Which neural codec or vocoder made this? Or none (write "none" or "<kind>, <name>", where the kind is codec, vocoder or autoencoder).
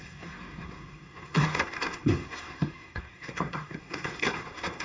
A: codec, SNAC